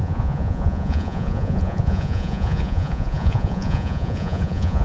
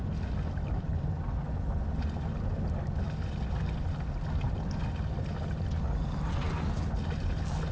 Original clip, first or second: second